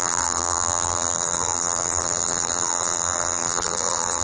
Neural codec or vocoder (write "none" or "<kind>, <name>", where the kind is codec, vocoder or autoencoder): vocoder, BigVGAN v2